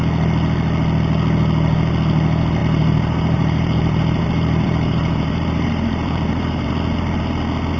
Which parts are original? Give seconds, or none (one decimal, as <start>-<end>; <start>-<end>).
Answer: 0.0-2.6; 6.7-7.8